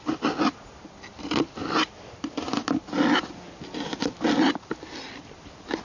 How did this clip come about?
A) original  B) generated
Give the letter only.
A